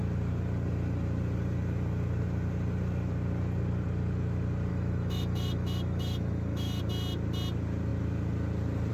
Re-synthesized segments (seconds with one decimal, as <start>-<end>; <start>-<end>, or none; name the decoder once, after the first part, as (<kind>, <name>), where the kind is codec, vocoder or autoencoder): 4.7-6.8 (autoencoder, DAC-VAE)